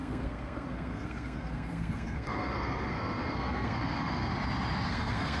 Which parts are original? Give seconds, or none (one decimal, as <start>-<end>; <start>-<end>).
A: 4.3-4.9